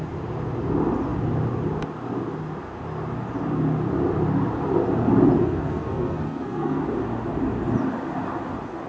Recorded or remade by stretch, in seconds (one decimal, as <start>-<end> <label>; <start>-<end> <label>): 0.0-5.4 recorded; 5.4-6.8 remade; 6.8-8.9 recorded